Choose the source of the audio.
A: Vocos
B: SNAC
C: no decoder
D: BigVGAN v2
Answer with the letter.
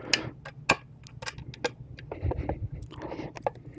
C